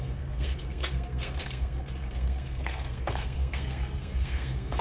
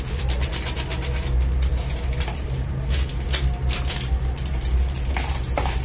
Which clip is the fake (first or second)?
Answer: first